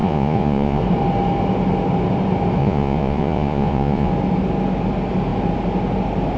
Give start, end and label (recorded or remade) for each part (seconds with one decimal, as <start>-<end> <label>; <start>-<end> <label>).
0.0-0.8 remade; 0.8-2.6 recorded; 2.6-4.1 remade; 4.1-6.4 recorded